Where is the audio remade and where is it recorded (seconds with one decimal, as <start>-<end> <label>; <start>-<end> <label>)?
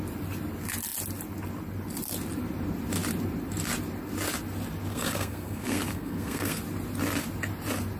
0.0-4.9 recorded; 4.9-6.6 remade; 6.6-8.0 recorded